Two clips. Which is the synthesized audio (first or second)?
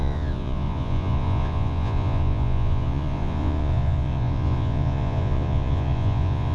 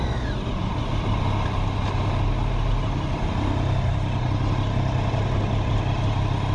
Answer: first